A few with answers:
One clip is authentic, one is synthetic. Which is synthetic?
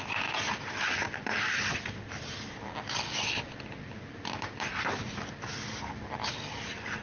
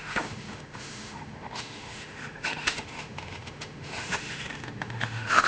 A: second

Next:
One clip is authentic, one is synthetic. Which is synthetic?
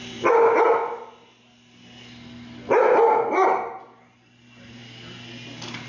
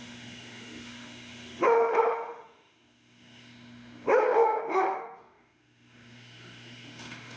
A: second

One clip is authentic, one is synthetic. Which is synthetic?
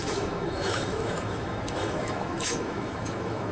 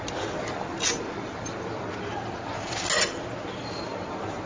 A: first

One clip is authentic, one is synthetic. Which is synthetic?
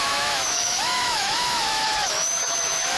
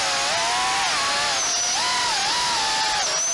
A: first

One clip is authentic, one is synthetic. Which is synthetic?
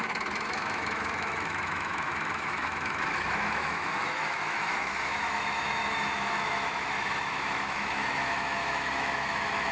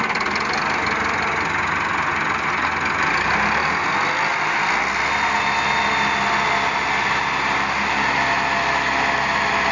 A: first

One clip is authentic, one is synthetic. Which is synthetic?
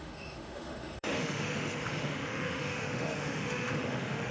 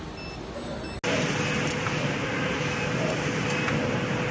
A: first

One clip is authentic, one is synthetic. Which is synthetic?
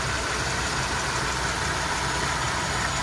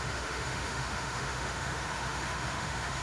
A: second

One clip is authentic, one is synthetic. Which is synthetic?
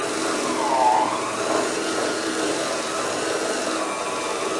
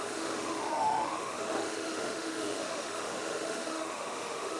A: second